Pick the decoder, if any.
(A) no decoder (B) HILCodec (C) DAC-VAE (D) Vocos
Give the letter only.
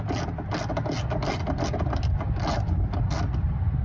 A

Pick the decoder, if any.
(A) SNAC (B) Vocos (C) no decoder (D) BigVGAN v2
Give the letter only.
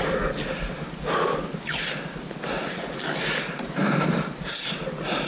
C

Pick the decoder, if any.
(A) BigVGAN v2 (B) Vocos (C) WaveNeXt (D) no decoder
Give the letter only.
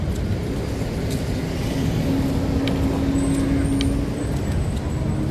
D